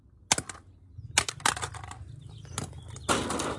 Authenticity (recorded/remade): recorded